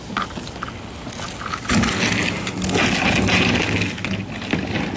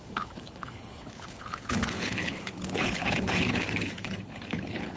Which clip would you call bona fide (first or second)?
first